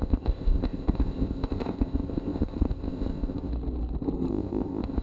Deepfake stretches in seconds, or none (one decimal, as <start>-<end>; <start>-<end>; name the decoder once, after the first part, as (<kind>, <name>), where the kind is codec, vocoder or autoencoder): 0.0-3.5 (codec, ZipCodec); 4.3-5.0